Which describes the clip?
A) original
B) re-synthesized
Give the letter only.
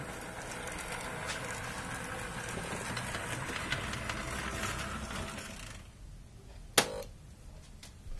A